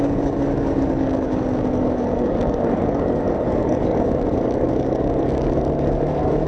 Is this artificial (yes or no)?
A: yes